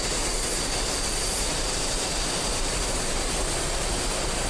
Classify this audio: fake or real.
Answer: real